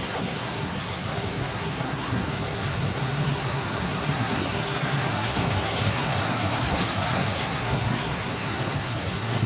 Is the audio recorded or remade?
remade